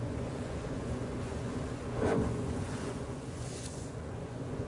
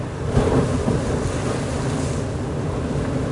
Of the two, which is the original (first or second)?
second